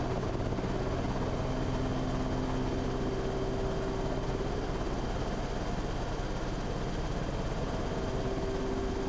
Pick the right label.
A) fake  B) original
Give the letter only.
B